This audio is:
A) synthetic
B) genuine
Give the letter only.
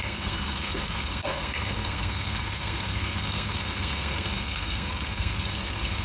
A